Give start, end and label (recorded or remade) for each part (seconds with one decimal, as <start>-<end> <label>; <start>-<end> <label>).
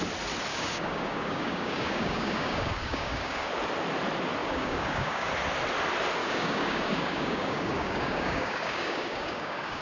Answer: 0.0-0.5 recorded; 0.5-3.5 remade; 3.5-4.4 recorded; 4.4-5.3 remade; 5.3-6.2 recorded; 6.2-9.8 remade